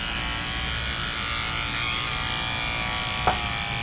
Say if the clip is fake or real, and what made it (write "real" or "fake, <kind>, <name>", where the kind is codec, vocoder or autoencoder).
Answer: real